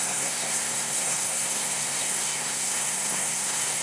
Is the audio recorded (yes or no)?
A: no